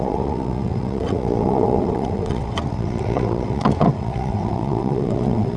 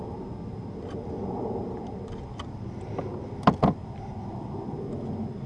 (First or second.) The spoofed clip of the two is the first